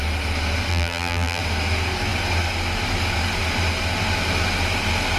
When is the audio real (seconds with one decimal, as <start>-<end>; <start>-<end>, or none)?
0.0-0.7; 1.4-5.2